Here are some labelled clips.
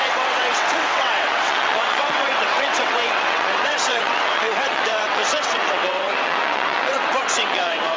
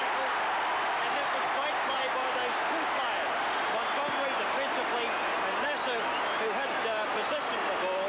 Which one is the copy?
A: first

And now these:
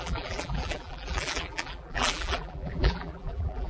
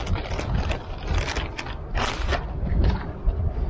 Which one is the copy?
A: first